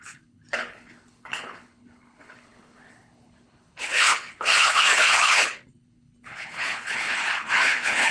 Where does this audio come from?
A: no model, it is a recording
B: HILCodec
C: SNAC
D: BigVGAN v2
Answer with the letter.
B